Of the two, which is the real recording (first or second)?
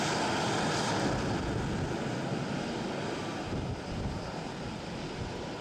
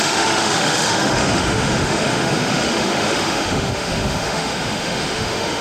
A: first